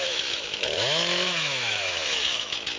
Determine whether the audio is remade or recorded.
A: remade